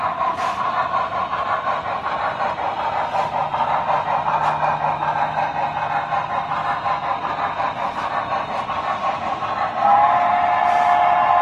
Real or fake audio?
real